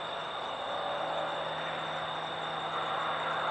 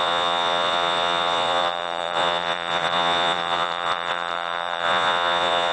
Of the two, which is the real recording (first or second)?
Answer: first